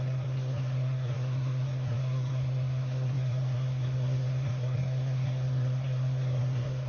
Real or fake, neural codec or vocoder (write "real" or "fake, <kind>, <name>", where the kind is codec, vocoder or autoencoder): fake, codec, SNAC